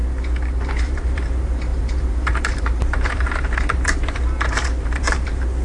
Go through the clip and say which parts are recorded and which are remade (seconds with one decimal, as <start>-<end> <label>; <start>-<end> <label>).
0.0-0.7 recorded; 0.7-5.6 remade